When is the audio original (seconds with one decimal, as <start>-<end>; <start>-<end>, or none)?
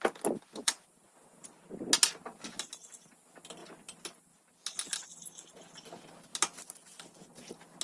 0.0-0.6; 1.5-7.8